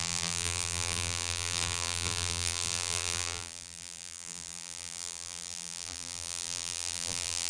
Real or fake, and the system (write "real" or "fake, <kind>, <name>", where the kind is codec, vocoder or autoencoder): fake, vocoder, BigVGAN v2